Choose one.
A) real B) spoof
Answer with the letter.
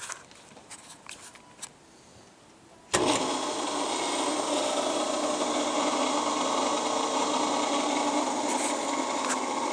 A